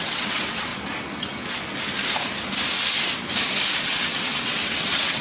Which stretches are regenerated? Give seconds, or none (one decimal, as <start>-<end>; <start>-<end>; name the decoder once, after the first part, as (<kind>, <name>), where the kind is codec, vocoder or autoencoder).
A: 0.0-0.7 (vocoder, WaveNeXt); 3.8-5.2